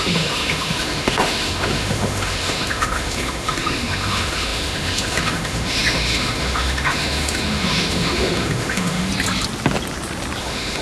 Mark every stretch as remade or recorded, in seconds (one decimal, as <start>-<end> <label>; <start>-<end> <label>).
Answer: 0.0-9.1 remade; 9.1-10.4 recorded; 10.4-10.8 remade